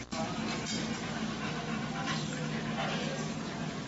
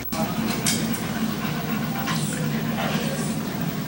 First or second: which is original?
first